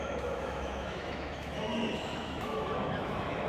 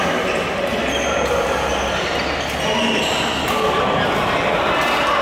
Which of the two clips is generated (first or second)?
first